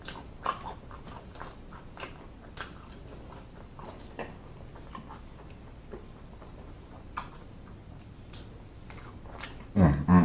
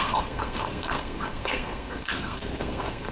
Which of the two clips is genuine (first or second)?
first